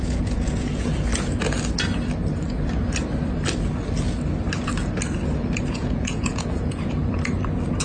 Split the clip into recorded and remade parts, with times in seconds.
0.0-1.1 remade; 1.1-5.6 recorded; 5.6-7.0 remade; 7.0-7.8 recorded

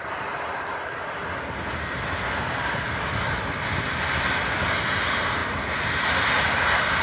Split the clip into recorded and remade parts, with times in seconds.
0.0-7.0 recorded

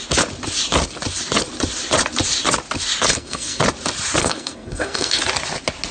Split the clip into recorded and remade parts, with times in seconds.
0.0-3.1 recorded; 3.1-3.6 remade; 3.6-4.2 recorded; 4.2-5.2 remade; 5.2-5.9 recorded